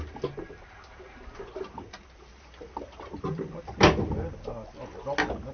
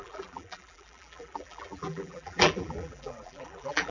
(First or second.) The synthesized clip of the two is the second